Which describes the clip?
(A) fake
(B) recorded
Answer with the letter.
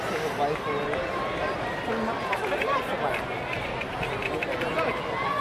B